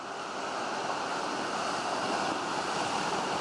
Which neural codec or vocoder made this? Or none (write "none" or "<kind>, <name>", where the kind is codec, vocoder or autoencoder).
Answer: none